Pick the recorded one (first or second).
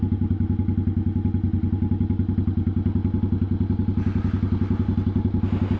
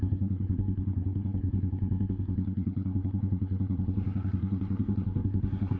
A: first